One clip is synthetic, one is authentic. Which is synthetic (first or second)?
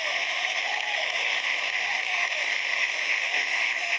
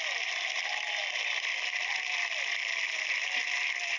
first